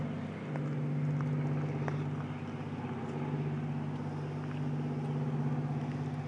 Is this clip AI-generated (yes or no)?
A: no